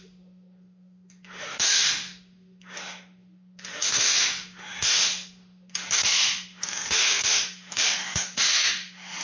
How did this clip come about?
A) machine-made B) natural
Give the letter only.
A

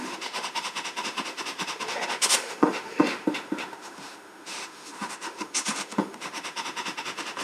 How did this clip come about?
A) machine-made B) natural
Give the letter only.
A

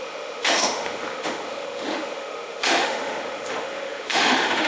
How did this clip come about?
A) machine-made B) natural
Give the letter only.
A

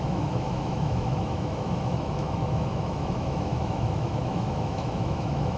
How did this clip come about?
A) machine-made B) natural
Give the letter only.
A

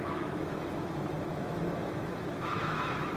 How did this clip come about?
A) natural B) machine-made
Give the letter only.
B